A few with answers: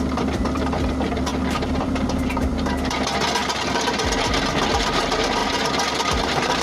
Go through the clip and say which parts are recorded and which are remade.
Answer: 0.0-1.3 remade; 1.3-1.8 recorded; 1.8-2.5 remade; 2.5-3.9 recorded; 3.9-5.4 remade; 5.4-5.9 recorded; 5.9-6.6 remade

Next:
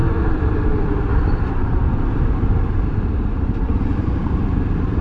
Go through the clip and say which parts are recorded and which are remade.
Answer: 0.0-5.0 remade